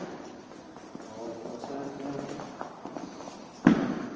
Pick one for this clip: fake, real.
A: real